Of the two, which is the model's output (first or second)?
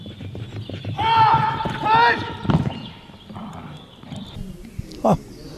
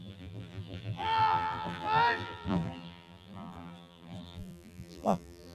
second